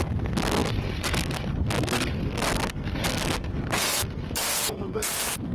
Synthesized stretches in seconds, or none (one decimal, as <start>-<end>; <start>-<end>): 0.0-5.5